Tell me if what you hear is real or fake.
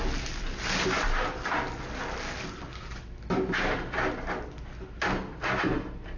real